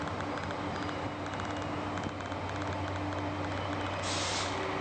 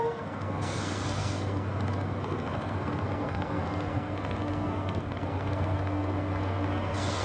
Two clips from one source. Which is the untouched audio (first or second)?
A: first